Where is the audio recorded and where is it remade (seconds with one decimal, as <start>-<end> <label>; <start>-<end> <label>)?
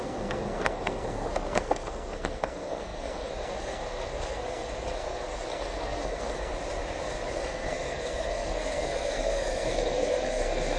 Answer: 0.0-6.5 remade; 6.5-7.3 recorded; 7.3-10.8 remade